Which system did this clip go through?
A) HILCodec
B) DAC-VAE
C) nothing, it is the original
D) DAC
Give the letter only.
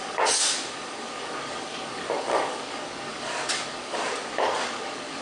D